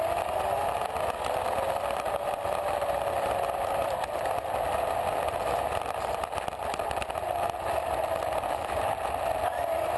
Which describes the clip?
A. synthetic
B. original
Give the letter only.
B